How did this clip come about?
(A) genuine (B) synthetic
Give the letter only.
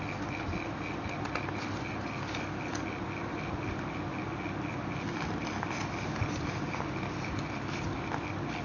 A